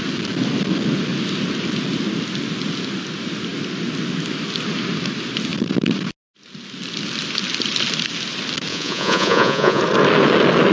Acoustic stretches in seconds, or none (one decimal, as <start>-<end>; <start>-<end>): 0.0-8.7; 9.8-10.7